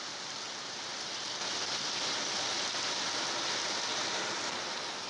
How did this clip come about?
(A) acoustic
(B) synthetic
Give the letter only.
A